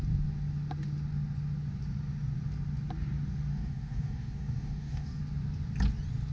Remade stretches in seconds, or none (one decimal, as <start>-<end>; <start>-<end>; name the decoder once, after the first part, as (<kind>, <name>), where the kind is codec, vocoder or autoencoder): 3.5-5.2 (codec, DAC)